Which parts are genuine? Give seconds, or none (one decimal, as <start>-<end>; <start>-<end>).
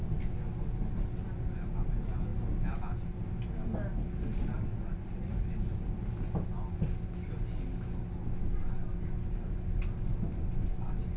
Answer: 0.0-4.7; 5.3-11.2